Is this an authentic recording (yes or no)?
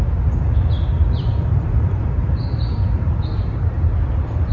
yes